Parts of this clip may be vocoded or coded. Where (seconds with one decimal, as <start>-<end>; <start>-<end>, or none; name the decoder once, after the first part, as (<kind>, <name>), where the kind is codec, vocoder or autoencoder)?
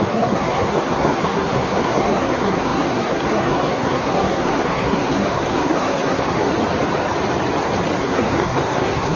0.0-6.5 (codec, SNAC); 8.0-9.2